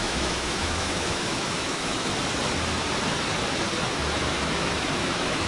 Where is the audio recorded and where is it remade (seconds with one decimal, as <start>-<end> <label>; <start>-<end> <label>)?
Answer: 0.0-2.1 remade; 2.1-4.0 recorded; 4.0-5.5 remade